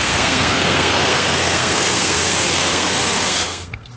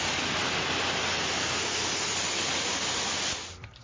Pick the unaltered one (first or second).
second